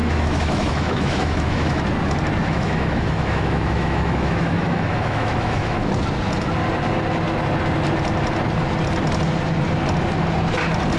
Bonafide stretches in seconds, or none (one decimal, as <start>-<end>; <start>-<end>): 1.8-2.4; 5.9-11.0